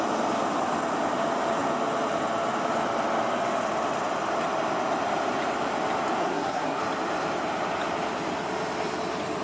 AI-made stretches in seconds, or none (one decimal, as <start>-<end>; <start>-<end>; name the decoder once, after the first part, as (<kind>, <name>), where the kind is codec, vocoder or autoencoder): 6.2-6.8 (codec, SNAC)